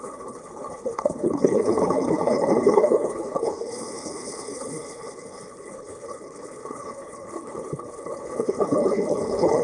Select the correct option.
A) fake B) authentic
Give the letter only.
A